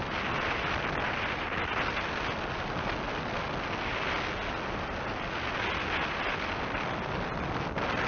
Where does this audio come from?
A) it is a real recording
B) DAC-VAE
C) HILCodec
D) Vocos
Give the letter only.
A